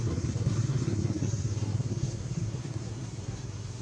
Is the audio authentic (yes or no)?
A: no